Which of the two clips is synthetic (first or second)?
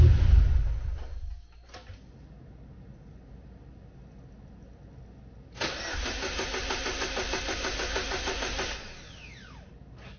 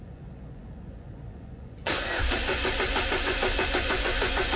second